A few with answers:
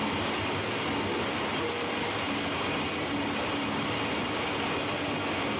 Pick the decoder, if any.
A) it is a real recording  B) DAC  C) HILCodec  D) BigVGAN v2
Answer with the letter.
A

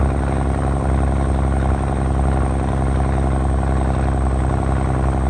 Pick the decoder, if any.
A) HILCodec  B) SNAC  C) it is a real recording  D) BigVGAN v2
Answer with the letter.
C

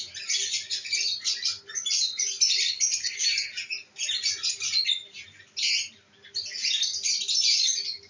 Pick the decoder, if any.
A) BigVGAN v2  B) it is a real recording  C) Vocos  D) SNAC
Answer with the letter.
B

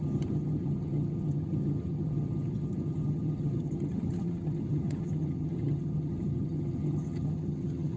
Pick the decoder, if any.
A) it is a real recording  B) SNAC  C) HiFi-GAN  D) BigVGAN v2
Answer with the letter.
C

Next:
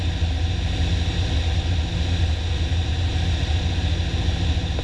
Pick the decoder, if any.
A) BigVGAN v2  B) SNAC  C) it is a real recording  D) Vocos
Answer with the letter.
C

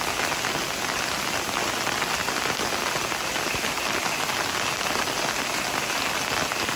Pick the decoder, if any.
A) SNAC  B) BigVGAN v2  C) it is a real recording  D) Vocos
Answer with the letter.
C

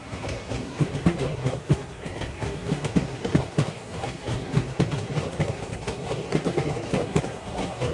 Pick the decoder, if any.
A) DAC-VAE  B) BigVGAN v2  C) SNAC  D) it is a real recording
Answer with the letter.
C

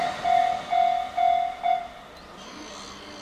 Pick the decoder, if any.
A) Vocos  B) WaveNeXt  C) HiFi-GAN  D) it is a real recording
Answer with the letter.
D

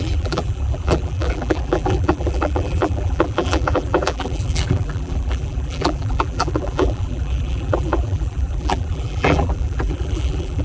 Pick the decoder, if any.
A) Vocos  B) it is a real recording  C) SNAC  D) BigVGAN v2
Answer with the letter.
D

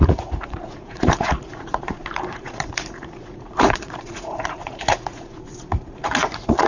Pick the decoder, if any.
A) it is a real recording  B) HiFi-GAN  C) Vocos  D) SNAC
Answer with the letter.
C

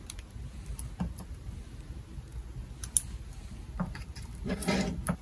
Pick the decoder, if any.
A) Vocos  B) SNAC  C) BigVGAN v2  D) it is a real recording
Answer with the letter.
D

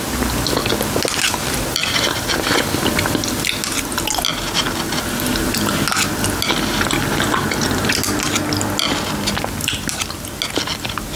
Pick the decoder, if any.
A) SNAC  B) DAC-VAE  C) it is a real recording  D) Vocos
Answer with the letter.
C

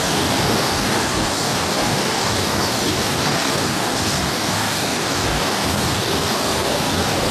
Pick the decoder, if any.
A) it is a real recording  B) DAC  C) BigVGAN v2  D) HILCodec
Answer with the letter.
B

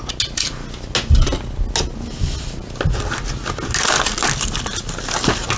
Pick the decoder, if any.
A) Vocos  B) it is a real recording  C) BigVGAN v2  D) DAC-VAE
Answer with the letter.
B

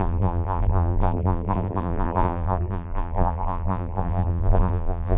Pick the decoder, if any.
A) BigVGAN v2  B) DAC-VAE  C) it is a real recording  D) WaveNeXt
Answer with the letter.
A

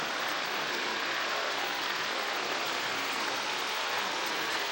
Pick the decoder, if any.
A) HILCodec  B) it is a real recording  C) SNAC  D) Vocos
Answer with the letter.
C